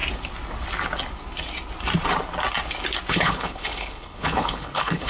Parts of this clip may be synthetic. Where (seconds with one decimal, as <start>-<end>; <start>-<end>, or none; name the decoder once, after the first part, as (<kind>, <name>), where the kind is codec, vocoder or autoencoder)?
3.1-5.1 (codec, HILCodec)